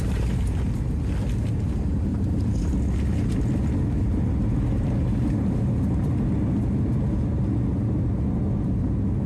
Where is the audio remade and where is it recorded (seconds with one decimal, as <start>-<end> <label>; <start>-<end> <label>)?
0.0-2.1 recorded; 2.1-2.7 remade; 2.7-9.3 recorded